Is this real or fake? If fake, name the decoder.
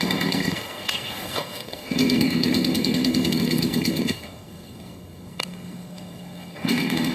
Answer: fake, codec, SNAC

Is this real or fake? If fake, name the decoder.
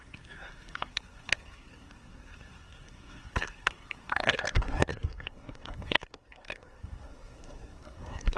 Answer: fake, codec, SNAC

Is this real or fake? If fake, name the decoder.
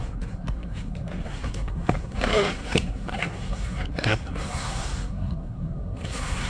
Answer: fake, codec, SNAC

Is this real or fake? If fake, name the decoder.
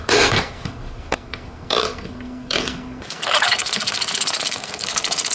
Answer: fake, codec, SNAC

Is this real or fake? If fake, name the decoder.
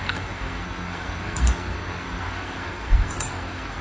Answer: fake, codec, SNAC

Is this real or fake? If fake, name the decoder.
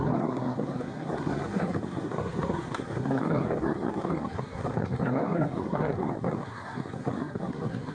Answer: fake, codec, SNAC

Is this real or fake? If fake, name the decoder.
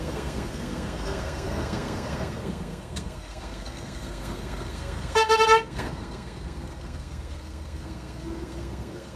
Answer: fake, codec, SNAC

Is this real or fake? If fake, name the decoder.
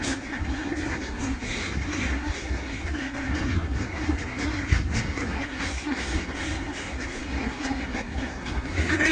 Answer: fake, codec, SNAC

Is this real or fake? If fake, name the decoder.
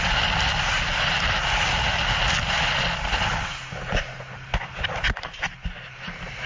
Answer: real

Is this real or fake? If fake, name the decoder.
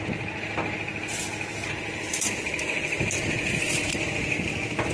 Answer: real